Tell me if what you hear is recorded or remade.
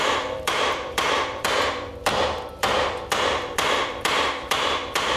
remade